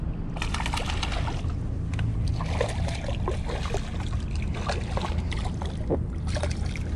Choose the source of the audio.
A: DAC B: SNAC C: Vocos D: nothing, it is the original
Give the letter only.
D